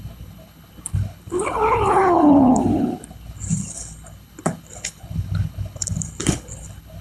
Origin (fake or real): fake